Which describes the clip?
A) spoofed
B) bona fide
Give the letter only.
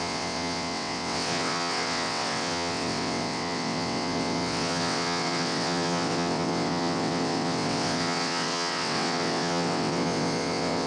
A